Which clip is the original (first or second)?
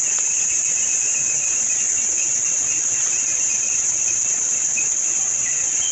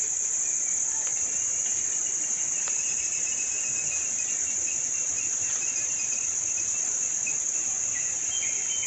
second